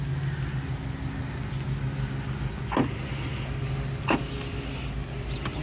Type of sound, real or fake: real